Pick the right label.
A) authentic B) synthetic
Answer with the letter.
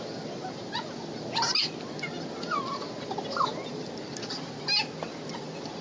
A